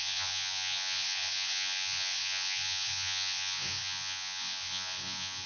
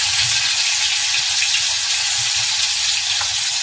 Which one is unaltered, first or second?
second